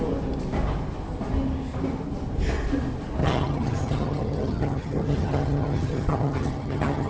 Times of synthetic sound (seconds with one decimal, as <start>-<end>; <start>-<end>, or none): 3.2-7.1